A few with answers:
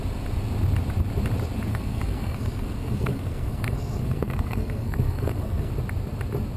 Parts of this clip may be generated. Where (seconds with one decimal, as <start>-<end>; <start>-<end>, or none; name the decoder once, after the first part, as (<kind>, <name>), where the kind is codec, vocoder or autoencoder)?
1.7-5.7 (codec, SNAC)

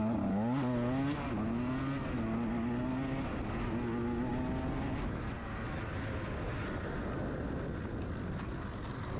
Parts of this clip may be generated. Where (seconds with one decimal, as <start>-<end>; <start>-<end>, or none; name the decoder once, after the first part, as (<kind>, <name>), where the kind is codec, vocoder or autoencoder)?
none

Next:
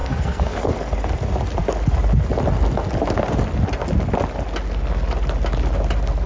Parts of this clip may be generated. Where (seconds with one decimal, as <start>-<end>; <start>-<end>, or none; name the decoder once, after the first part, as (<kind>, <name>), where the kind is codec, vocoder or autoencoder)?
0.0-0.7 (codec, SNAC)

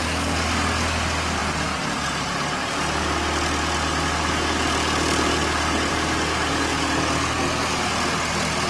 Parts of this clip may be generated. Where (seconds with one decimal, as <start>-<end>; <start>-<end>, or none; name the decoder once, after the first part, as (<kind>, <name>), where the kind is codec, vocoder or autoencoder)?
none

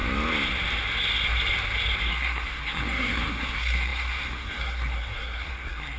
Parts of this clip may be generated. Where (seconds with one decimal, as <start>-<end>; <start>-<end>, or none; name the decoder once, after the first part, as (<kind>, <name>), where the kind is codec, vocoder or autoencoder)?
2.1-6.0 (codec, SNAC)

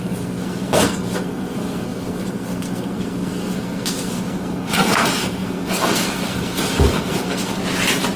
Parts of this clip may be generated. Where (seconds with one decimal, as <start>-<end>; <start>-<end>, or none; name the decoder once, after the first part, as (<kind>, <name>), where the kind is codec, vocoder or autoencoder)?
0.0-7.6 (codec, SNAC)